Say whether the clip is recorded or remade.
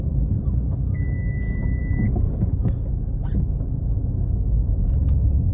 recorded